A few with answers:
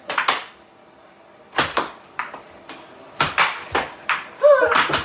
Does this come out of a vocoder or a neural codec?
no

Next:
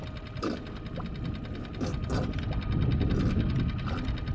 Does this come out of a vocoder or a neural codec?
no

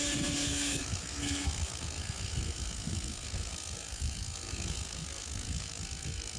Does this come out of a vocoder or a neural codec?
yes